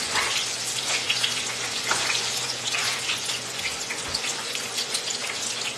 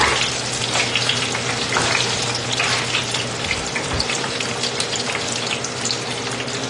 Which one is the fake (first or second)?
first